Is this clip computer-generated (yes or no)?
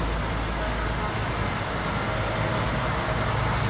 no